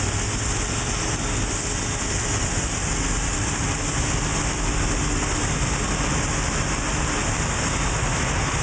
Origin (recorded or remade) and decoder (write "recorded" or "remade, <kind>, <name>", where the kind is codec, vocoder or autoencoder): recorded